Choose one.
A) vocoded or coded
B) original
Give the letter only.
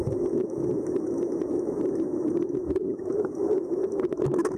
A